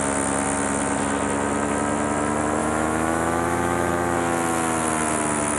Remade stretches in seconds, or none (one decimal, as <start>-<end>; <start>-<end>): 2.6-3.9